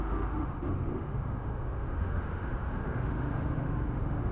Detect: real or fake fake